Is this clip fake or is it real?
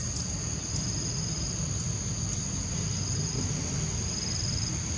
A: real